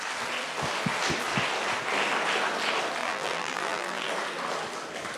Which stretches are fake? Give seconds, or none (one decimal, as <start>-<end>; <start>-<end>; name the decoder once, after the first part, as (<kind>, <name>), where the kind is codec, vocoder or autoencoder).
3.0-4.1 (vocoder, BigVGAN v2)